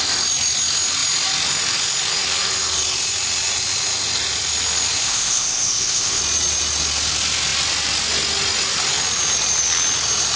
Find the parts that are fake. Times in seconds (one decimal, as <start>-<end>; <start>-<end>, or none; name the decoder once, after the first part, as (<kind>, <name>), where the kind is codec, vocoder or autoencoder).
5.0-6.2 (codec, ZipCodec)